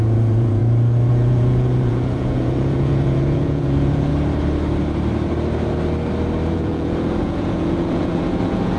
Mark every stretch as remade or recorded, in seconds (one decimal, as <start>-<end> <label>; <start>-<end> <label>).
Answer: 0.0-0.6 remade; 0.6-1.1 recorded; 1.1-4.1 remade; 4.1-6.5 recorded; 6.5-8.8 remade